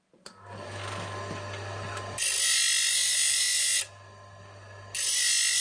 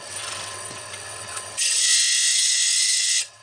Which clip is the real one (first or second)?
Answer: first